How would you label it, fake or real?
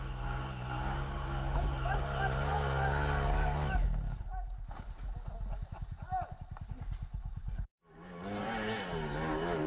real